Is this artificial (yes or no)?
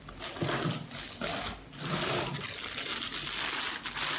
no